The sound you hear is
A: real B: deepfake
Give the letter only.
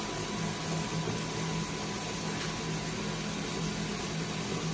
A